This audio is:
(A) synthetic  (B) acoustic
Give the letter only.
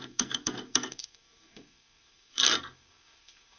A